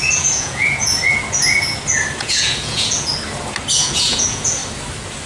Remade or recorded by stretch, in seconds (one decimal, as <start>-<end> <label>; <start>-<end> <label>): 0.0-0.8 remade; 0.8-2.2 recorded; 2.2-3.1 remade; 3.1-3.7 recorded; 3.7-4.6 remade; 4.6-5.3 recorded